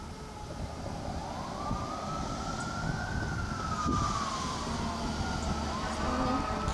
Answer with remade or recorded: recorded